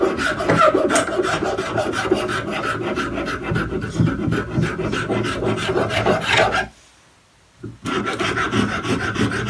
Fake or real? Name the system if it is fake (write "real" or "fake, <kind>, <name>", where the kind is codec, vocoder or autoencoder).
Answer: real